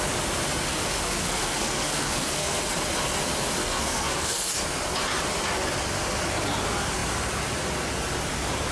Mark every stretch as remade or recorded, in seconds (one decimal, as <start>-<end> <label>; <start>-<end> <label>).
0.0-0.7 recorded; 0.7-2.6 remade; 2.6-3.6 recorded; 3.6-4.5 remade; 4.5-8.7 recorded